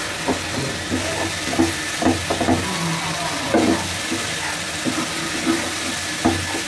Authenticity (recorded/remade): recorded